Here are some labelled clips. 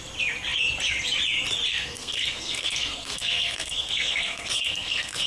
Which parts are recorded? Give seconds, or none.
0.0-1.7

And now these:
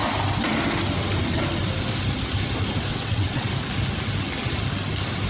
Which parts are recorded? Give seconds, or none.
0.0-2.9; 3.5-5.3

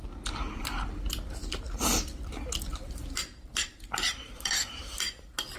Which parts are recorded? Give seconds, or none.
0.0-2.7; 5.1-5.6